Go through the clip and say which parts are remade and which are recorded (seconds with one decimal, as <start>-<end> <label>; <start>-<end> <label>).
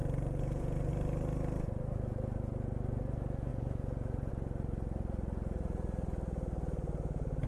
0.0-0.9 remade; 0.9-3.5 recorded; 3.5-4.3 remade; 4.3-7.5 recorded